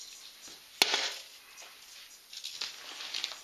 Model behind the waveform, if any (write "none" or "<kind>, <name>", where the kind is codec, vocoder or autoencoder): none